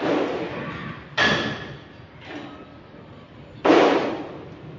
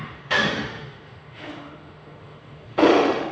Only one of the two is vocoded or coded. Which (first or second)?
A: second